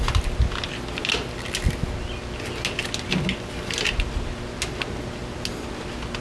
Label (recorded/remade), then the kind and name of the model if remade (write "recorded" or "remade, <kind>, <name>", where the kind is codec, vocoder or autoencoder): recorded